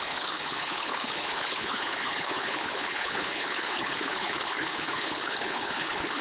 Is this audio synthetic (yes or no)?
yes